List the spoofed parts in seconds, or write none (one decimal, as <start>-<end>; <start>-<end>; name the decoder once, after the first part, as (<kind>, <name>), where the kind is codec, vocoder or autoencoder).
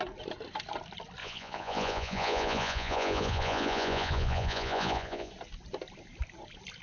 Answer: 1.2-5.3 (vocoder, Vocos)